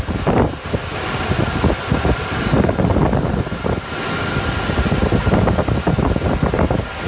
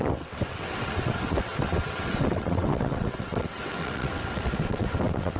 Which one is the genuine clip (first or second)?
first